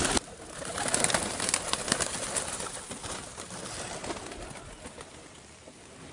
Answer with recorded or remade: recorded